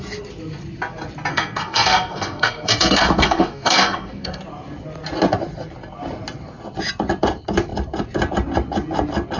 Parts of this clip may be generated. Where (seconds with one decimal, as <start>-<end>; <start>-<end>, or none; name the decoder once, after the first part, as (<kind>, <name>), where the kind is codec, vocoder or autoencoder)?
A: 1.3-4.4 (codec, SNAC)